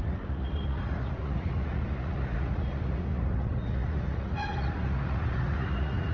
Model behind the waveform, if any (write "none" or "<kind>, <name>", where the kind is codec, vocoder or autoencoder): vocoder, Vocos